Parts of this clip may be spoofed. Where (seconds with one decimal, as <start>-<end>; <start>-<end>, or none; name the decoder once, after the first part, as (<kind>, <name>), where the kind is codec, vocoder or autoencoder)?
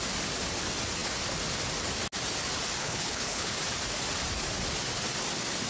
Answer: 2.8-3.6 (codec, HILCodec)